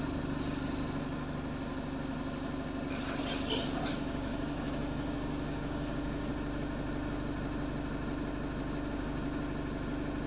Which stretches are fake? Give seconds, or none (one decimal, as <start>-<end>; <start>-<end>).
3.9-6.3